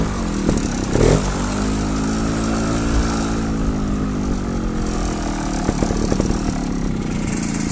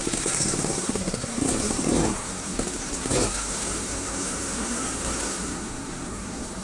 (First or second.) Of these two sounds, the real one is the first